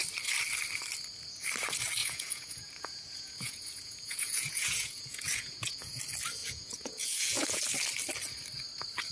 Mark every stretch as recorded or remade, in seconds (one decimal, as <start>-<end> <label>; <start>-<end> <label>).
0.0-2.0 recorded; 2.0-6.0 remade; 6.0-6.4 recorded; 6.4-7.6 remade; 7.6-9.1 recorded